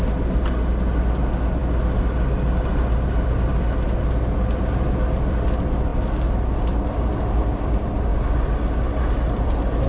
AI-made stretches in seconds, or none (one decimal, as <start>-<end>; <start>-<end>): none